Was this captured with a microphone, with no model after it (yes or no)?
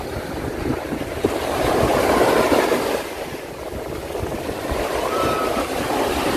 yes